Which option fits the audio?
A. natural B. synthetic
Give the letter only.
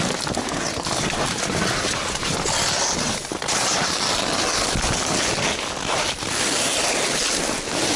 A